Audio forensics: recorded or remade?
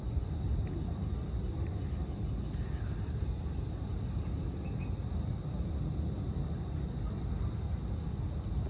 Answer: recorded